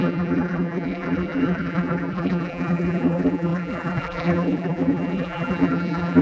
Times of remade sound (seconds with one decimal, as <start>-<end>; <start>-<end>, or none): 0.0-6.2